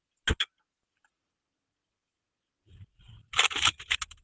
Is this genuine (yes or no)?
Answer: yes